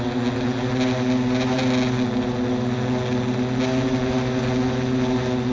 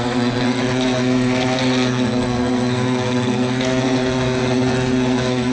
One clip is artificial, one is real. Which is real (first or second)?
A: first